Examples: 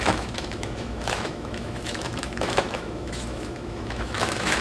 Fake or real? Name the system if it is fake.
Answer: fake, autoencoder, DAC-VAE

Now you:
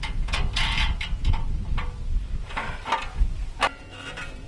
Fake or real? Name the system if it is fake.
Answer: real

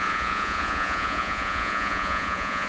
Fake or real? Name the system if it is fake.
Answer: fake, vocoder, Vocos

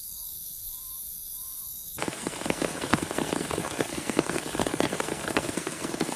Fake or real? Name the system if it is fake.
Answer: fake, codec, SNAC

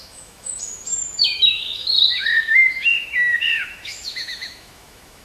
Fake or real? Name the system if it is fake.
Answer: fake, autoencoder, DAC-VAE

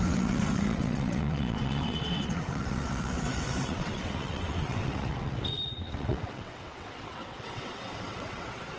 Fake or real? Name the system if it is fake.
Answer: fake, vocoder, WaveNeXt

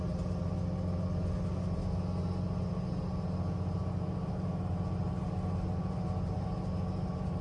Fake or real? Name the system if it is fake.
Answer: real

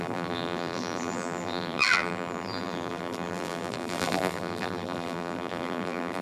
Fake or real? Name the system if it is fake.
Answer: fake, vocoder, BigVGAN v2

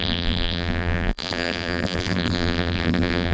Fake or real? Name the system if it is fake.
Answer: fake, vocoder, BigVGAN v2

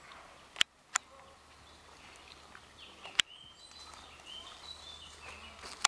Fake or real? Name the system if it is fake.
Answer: real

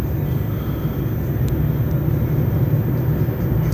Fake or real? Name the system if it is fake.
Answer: real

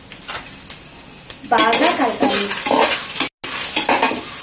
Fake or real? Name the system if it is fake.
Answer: real